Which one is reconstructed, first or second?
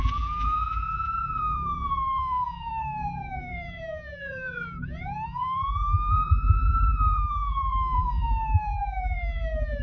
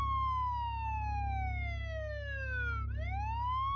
first